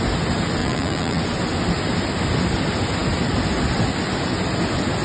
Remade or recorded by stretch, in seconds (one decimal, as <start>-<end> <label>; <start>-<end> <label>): 0.0-0.6 recorded; 0.6-1.2 remade; 1.2-5.0 recorded